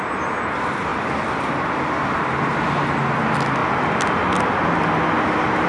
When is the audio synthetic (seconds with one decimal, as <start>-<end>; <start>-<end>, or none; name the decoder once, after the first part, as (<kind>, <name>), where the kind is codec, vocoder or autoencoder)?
none